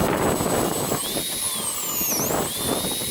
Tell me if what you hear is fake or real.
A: real